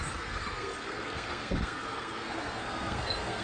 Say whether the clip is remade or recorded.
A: remade